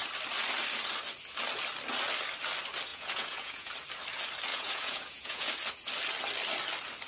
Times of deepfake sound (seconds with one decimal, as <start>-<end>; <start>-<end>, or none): 2.9-3.7; 4.5-5.5